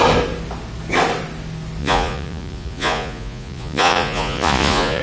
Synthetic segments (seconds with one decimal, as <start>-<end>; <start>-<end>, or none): 1.8-5.0